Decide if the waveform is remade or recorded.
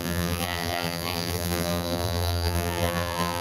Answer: remade